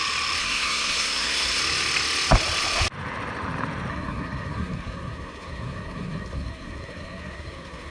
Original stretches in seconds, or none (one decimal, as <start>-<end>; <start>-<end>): 0.0-0.4; 1.6-3.9

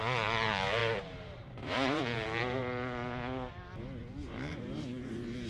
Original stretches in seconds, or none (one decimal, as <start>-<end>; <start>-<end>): 2.6-4.0

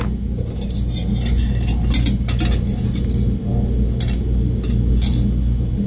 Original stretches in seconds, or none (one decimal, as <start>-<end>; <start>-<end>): 0.0-5.9

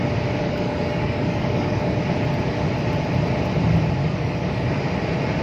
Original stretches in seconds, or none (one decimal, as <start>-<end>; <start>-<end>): 0.0-0.4; 2.0-4.0; 4.7-5.4

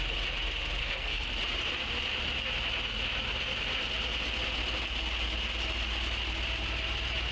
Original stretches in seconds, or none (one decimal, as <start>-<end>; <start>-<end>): 0.0-0.8; 1.3-7.3